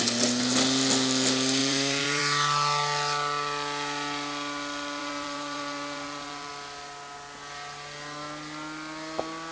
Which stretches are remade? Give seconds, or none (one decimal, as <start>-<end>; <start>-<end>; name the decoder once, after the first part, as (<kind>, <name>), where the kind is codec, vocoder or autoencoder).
1.6-2.2 (vocoder, BigVGAN v2); 5.0-6.5